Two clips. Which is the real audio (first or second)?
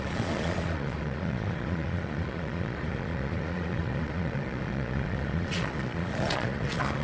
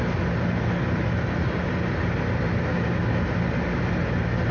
second